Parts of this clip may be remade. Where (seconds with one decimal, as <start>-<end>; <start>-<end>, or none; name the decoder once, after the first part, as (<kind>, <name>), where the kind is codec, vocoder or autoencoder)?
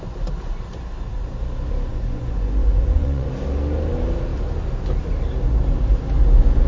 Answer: 1.9-3.3 (vocoder, Vocos)